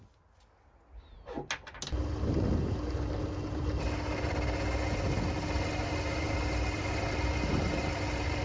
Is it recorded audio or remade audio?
recorded